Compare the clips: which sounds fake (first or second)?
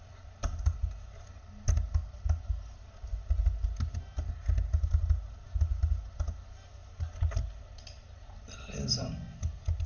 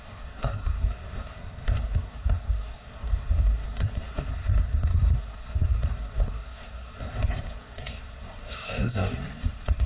second